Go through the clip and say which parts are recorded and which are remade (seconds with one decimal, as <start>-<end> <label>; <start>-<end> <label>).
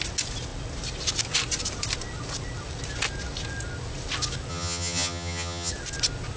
0.0-4.5 recorded; 4.5-5.7 remade; 5.7-6.4 recorded